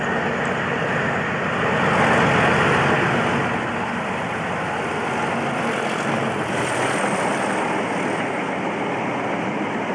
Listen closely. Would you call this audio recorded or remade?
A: recorded